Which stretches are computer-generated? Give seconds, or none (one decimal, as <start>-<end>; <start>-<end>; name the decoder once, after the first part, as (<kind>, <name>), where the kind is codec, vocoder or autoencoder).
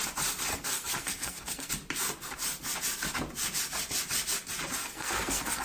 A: 0.5-1.7 (codec, SNAC); 4.8-5.6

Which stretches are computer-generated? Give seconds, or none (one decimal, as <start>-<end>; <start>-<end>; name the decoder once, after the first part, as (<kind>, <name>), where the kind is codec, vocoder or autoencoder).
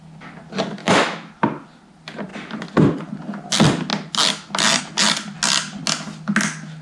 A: 0.8-1.3 (autoencoder, DAC-VAE)